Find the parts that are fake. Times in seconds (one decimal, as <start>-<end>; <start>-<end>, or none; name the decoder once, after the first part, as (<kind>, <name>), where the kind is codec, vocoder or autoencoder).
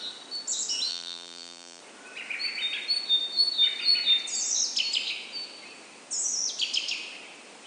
0.9-1.8 (vocoder, BigVGAN v2)